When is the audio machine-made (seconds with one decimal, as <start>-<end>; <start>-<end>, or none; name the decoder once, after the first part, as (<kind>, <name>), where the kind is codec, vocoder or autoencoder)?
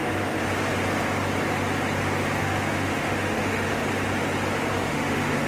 2.4-3.8 (autoencoder, DAC-VAE); 4.7-5.5